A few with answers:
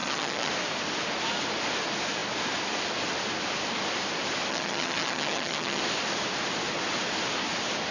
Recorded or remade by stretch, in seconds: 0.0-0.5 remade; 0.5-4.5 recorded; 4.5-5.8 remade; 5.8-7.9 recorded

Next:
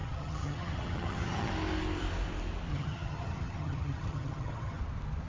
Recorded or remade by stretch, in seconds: 0.0-1.5 remade; 1.5-2.7 recorded; 2.7-4.8 remade; 4.8-5.3 recorded

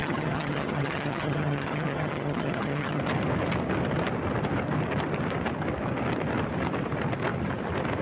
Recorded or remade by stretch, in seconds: 0.0-3.0 remade; 3.0-8.0 recorded